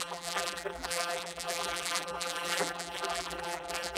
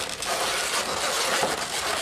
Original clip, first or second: second